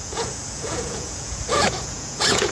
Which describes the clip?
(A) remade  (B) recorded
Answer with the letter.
A